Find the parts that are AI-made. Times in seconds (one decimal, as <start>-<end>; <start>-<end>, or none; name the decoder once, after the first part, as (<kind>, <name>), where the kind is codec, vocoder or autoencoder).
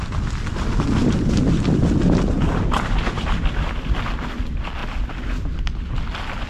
none